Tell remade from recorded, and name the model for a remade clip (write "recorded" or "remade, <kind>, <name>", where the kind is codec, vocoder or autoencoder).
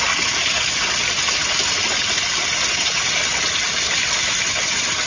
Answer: recorded